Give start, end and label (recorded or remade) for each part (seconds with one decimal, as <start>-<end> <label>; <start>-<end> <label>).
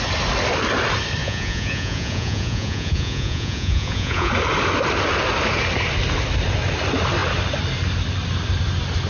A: 0.0-1.2 recorded; 1.2-4.3 remade; 4.3-9.1 recorded